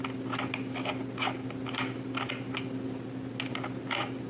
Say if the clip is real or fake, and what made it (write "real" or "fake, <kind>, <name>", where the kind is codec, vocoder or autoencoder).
real